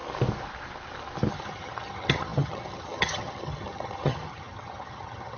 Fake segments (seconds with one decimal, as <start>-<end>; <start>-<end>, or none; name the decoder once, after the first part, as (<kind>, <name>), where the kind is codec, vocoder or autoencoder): 1.3-5.4 (vocoder, HiFi-GAN)